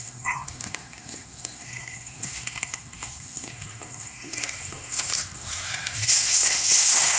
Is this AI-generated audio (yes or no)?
yes